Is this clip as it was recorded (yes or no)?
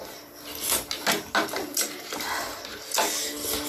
yes